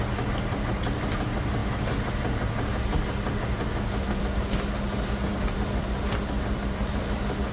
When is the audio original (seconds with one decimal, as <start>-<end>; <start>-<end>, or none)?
0.0-5.3; 6.9-7.5